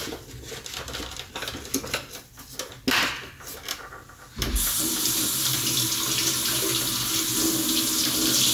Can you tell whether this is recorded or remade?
recorded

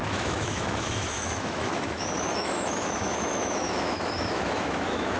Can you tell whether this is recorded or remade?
remade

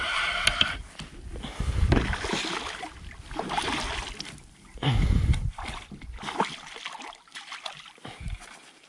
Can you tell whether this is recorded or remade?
recorded